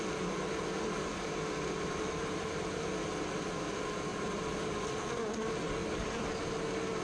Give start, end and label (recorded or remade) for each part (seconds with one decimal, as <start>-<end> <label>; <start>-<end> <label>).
0.0-1.1 recorded; 1.1-2.8 remade; 2.8-4.1 recorded; 4.1-4.7 remade; 4.7-5.8 recorded; 5.8-6.4 remade; 6.4-7.0 recorded